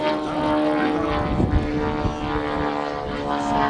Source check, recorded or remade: recorded